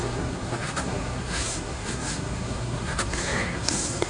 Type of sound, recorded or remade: remade